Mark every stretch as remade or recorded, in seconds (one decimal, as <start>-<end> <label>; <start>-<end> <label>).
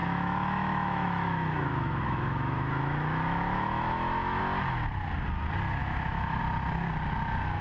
0.0-4.4 remade; 4.4-5.8 recorded; 5.8-6.4 remade; 6.4-7.6 recorded